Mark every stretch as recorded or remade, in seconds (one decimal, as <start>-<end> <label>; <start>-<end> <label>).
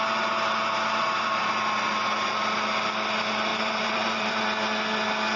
0.0-3.5 recorded; 3.5-4.4 remade; 4.4-5.4 recorded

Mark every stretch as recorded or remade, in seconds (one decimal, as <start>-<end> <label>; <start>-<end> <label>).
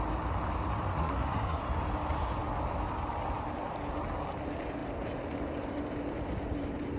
0.0-1.0 recorded; 1.0-1.6 remade; 1.6-7.0 recorded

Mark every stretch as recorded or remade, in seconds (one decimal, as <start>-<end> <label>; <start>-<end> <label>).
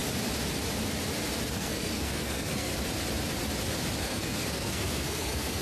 0.0-1.5 recorded; 1.5-2.7 remade; 2.7-4.0 recorded; 4.0-5.6 remade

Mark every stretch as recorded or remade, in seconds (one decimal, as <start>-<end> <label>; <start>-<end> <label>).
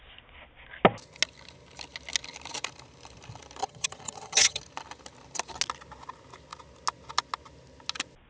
0.0-3.6 recorded; 3.6-4.6 remade; 4.6-8.3 recorded